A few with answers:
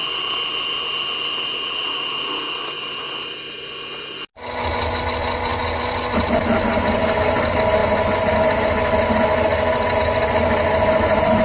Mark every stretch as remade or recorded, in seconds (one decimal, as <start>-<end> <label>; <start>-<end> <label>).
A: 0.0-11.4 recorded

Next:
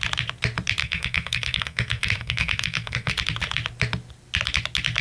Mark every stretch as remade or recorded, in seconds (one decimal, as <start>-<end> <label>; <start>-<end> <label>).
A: 0.0-0.8 recorded; 0.8-3.1 remade; 3.1-5.0 recorded

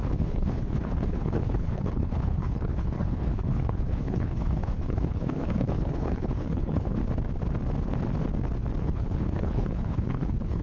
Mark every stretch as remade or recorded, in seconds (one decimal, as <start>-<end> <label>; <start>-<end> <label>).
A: 0.0-7.0 remade; 7.0-8.8 recorded; 8.8-10.6 remade

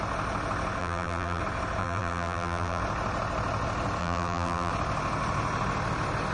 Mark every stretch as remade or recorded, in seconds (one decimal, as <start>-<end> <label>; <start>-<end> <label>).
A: 0.0-0.8 recorded; 0.8-1.4 remade; 1.4-1.8 recorded; 1.8-2.8 remade; 2.8-4.0 recorded; 4.0-4.7 remade; 4.7-6.3 recorded

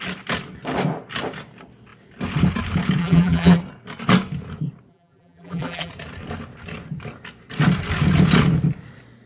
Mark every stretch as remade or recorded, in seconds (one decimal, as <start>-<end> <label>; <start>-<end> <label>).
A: 0.0-3.0 recorded; 3.0-3.6 remade; 3.6-4.9 recorded; 4.9-5.9 remade; 5.9-9.3 recorded